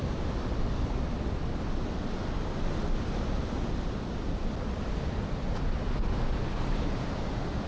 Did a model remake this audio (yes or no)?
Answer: no